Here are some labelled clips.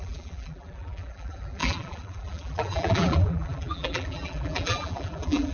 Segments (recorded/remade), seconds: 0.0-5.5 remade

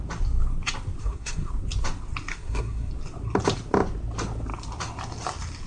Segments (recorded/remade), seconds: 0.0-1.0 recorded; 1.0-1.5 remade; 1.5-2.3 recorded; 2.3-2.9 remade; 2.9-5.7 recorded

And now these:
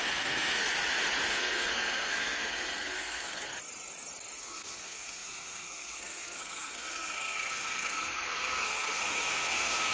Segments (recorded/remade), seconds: 0.0-0.6 remade; 0.6-1.3 recorded; 1.3-3.5 remade; 3.5-4.4 recorded; 4.4-9.9 remade